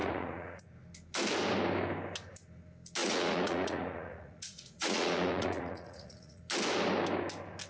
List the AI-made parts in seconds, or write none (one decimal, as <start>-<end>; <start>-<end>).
0.0-0.6; 3.0-6.4